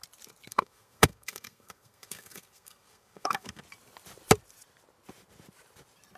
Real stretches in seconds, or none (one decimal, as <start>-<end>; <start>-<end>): 0.0-0.5; 3.6-6.2